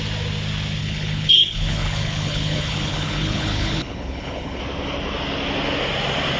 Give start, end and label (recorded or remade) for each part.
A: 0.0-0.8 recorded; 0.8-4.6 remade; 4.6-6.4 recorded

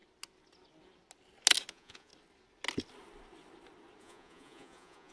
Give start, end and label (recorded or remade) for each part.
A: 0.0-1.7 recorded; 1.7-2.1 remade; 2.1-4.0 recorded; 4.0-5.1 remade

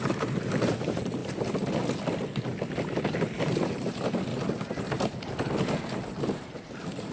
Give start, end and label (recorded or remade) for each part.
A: 0.0-1.2 remade; 1.2-3.0 recorded; 3.0-4.3 remade; 4.3-6.2 recorded; 6.2-7.1 remade

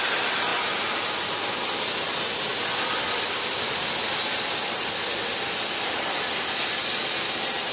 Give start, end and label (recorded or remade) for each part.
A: 0.0-7.7 recorded